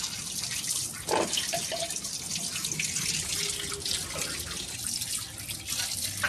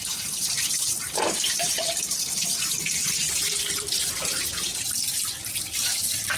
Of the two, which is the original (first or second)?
first